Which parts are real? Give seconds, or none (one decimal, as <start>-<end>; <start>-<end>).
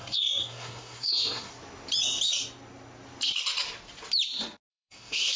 1.5-4.7